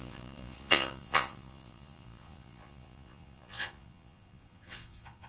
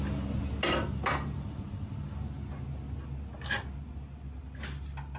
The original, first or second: second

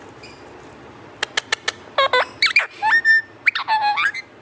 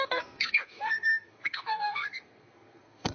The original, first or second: first